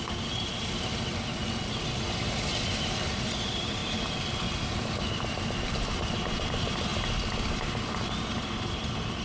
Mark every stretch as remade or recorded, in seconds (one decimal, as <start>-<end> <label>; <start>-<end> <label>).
0.0-3.8 remade; 3.8-4.4 recorded; 4.4-6.9 remade; 6.9-7.6 recorded; 7.6-9.2 remade